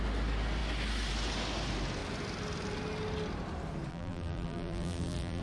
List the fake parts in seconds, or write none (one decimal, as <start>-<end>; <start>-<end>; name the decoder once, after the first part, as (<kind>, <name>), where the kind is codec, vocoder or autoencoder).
3.9-5.4 (vocoder, BigVGAN v2)